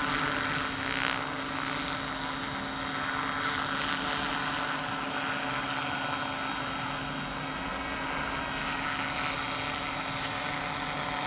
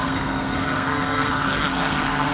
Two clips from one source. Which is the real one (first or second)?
first